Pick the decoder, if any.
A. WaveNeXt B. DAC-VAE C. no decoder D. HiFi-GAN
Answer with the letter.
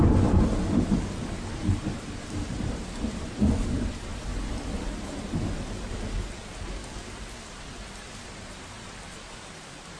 C